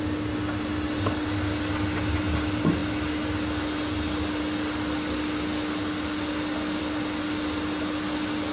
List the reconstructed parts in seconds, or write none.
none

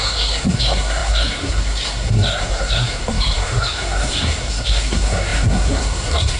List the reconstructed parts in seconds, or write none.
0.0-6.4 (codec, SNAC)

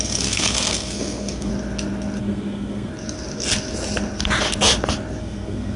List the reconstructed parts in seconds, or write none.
0.0-1.5 (codec, SNAC); 2.2-2.9; 5.2-5.8